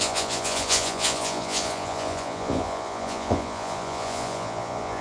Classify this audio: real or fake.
fake